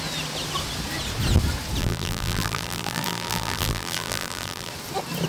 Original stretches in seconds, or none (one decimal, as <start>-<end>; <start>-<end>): 0.0-1.8; 4.7-5.3

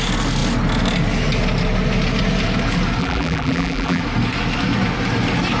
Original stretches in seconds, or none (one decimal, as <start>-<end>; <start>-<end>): 0.0-3.0; 4.0-5.6

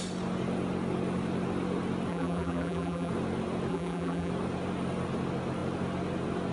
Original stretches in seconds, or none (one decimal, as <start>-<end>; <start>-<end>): 0.0-2.1; 3.1-3.7; 4.3-6.5

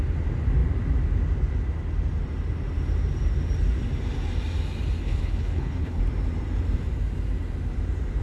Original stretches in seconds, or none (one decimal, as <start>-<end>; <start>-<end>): 0.0-5.0; 6.0-8.2

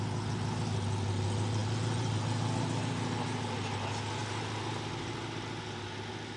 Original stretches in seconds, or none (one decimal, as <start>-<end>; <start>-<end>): 0.0-6.4